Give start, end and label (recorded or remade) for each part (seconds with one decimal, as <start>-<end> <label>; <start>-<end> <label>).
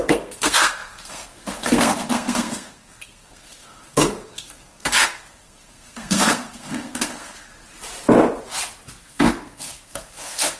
0.0-7.5 remade; 7.5-9.0 recorded; 9.0-10.6 remade